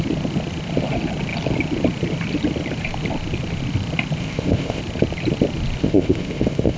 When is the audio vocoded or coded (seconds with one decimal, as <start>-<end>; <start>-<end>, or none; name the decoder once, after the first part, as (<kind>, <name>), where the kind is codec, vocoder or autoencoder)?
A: 4.2-4.8 (codec, ZipCodec); 5.8-6.8